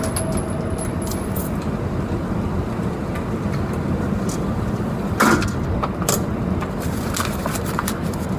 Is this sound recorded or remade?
recorded